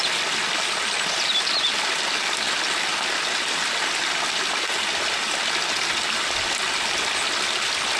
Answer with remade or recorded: recorded